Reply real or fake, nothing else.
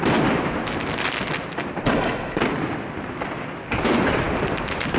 fake